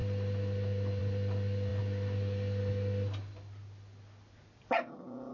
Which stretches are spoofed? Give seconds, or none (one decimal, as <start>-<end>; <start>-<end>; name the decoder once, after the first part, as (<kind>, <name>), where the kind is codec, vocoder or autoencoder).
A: none